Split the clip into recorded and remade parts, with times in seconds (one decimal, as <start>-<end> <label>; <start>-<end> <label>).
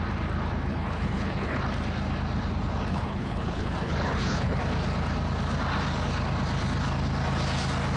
0.0-0.7 recorded; 0.7-1.6 remade; 1.6-2.9 recorded; 2.9-4.6 remade; 4.6-8.0 recorded